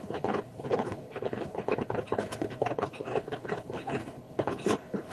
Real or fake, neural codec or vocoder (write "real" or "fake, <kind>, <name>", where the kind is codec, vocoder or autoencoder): fake, codec, HILCodec